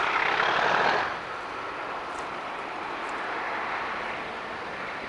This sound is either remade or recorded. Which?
remade